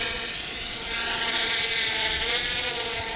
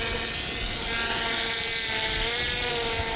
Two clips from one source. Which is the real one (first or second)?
second